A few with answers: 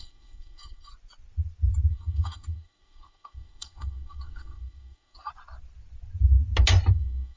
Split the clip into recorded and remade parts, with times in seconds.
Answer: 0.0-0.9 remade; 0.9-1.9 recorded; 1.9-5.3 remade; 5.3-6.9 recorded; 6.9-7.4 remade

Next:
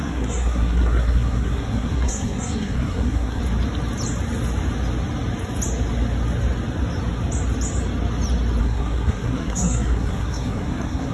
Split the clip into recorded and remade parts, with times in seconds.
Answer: 0.0-3.4 remade; 3.4-8.6 recorded; 8.6-11.1 remade

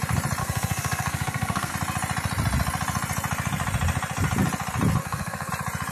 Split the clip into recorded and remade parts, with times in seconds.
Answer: 0.0-0.4 recorded; 0.4-1.7 remade; 1.7-5.0 recorded; 5.0-5.5 remade; 5.5-5.9 recorded

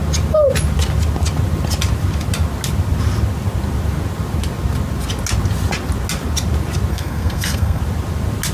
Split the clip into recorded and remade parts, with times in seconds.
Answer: 0.0-6.9 recorded; 6.9-7.8 remade; 7.8-8.5 recorded

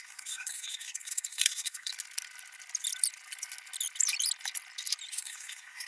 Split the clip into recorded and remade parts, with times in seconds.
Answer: 0.0-1.9 remade; 1.9-5.1 recorded; 5.1-5.9 remade

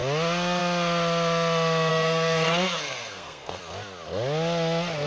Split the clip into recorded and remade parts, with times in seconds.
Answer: 0.0-1.9 recorded; 1.9-3.6 remade; 3.6-5.1 recorded